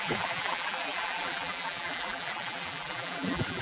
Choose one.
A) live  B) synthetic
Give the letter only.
B